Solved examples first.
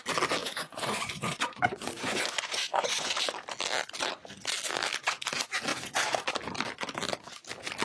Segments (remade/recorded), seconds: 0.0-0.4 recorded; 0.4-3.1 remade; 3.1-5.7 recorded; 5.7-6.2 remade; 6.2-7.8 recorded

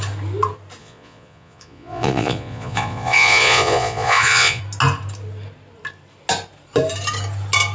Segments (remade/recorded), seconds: 0.0-0.8 recorded; 0.8-4.6 remade; 4.6-7.7 recorded

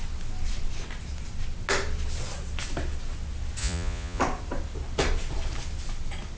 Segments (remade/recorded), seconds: 0.0-3.6 recorded; 3.6-4.2 remade; 4.2-6.4 recorded

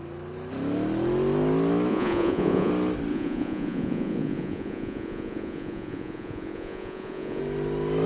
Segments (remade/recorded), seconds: 0.0-1.9 recorded; 1.9-2.7 remade; 2.7-3.1 recorded; 3.1-7.4 remade; 7.4-8.1 recorded

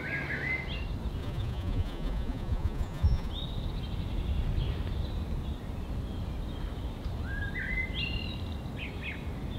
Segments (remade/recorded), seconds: 0.0-1.2 recorded; 1.2-3.3 remade; 3.3-9.6 recorded

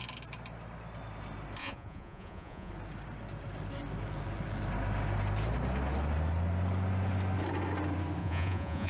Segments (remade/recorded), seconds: 0.0-1.6 recorded; 1.6-2.7 remade; 2.7-8.2 recorded; 8.2-8.9 remade

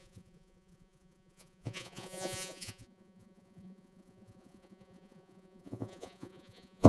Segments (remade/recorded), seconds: 0.0-6.9 remade

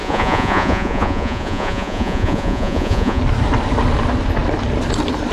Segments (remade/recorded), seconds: 0.0-3.2 remade; 3.2-5.3 recorded